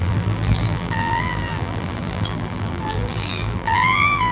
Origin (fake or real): fake